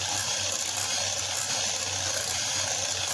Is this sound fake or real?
real